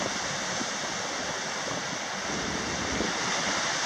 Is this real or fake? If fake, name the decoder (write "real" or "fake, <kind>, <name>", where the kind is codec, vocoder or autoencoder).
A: real